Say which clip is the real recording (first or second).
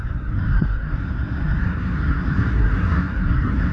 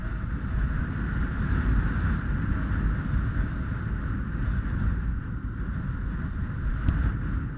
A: second